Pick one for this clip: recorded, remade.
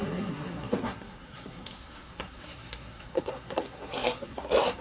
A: remade